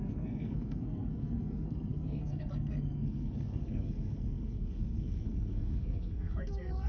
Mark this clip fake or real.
fake